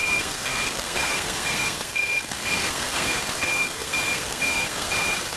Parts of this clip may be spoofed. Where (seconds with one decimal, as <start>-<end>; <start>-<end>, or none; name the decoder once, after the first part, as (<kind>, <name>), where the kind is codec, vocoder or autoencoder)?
0.0-5.4 (codec, SNAC)